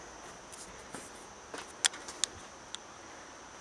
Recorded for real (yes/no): yes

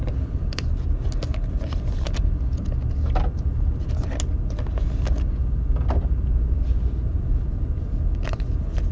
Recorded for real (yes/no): yes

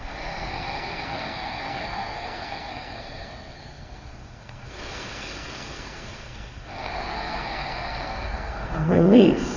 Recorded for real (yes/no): no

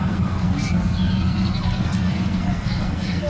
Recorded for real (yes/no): no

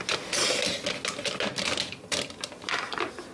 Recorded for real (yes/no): yes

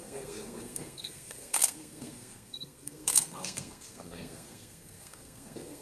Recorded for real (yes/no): no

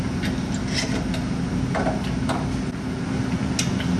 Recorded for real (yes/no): yes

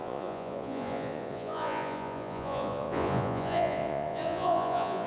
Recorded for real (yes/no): no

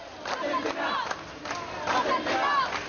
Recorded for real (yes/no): yes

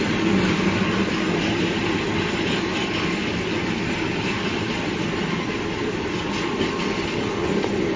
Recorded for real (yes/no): yes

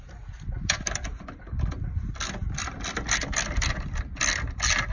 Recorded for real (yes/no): yes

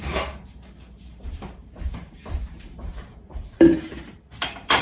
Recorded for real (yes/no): no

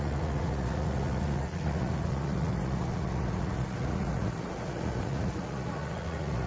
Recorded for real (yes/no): no